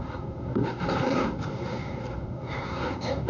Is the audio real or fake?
fake